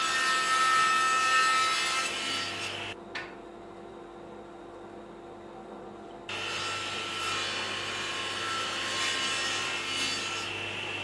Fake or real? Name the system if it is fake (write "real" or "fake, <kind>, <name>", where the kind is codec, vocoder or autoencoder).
real